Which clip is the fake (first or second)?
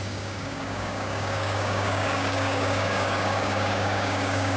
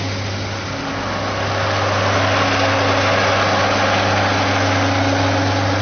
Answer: first